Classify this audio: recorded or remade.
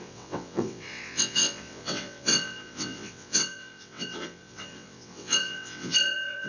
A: remade